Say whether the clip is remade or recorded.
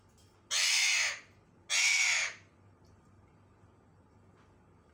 recorded